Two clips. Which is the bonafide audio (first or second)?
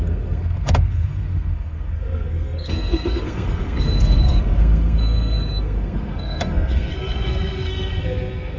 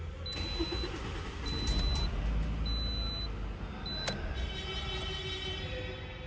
second